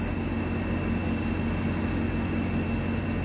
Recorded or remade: recorded